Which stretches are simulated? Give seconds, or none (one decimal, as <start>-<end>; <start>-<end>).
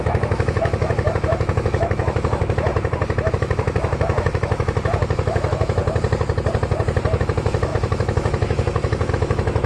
0.0-2.7; 3.3-5.8; 7.2-9.7